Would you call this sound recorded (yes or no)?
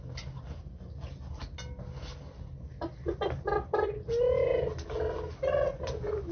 yes